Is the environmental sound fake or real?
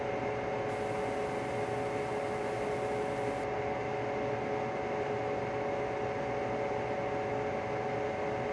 real